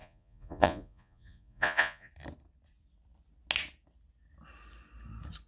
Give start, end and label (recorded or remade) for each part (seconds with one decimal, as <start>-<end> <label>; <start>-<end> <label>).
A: 0.0-2.1 remade; 2.1-5.5 recorded